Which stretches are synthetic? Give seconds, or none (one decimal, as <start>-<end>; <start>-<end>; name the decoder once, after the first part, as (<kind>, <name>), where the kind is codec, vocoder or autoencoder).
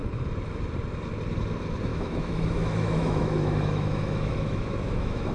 1.9-5.3 (autoencoder, DAC-VAE)